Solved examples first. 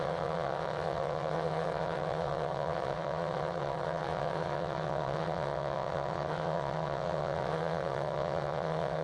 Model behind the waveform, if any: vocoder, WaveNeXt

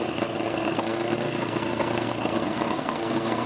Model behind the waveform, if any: codec, SNAC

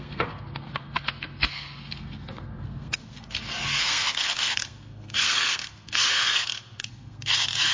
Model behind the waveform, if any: codec, SNAC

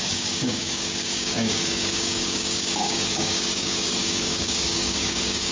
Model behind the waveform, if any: codec, DAC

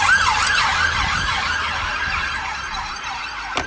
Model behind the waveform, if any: vocoder, BigVGAN v2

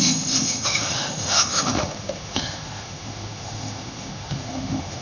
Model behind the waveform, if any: autoencoder, DAC-VAE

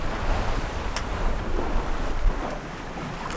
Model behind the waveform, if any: none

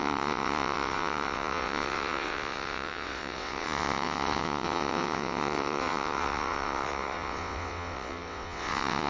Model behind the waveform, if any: vocoder, WaveNeXt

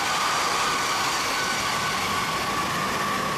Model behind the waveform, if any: none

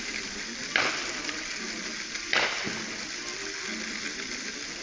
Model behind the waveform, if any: none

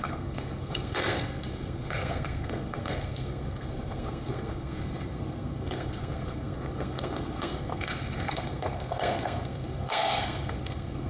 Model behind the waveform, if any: codec, SNAC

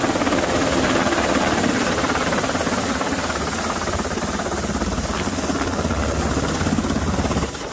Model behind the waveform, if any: none